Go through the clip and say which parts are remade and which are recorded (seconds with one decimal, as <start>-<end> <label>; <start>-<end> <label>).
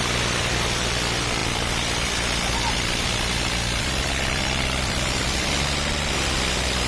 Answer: 0.0-6.9 remade